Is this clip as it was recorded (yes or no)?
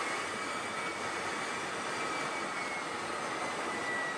yes